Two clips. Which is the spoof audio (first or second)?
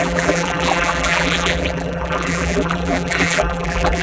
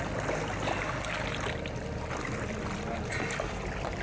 first